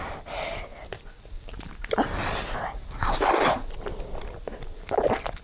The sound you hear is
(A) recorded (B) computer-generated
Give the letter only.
A